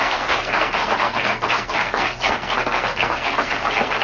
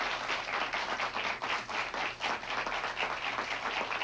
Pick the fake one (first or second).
first